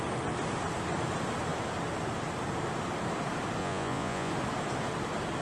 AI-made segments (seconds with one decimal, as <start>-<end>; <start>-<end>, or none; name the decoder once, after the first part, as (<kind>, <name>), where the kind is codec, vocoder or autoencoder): 3.6-4.3 (vocoder, Vocos)